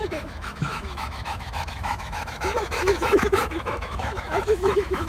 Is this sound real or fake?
fake